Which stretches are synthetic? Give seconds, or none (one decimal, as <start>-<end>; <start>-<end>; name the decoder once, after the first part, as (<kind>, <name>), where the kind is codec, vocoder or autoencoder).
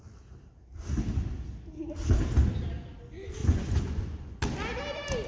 3.4-4.4 (vocoder, Vocos)